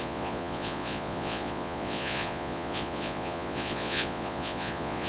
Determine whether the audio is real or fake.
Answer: fake